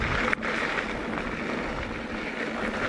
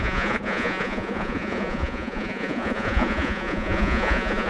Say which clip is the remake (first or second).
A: second